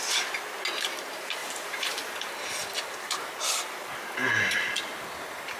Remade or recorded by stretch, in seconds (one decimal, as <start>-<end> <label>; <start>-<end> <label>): 0.0-1.4 recorded; 1.4-2.1 remade; 2.1-2.6 recorded; 2.6-3.3 remade; 3.3-5.6 recorded